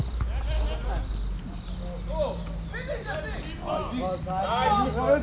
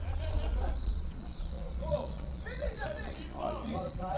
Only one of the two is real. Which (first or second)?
first